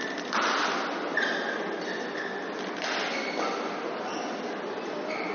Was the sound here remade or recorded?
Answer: recorded